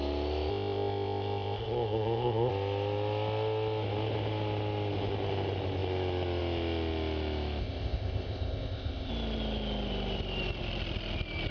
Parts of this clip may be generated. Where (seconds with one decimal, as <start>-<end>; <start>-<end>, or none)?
0.5-2.5; 7.6-9.1